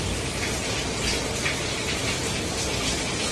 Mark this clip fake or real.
real